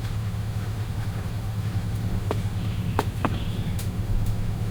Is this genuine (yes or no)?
no